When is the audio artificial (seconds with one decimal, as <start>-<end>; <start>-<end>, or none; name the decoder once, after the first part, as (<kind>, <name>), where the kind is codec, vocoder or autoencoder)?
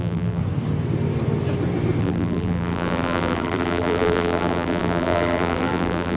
0.0-0.4 (vocoder, BigVGAN v2); 2.0-6.2